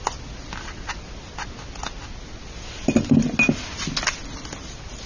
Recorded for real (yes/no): yes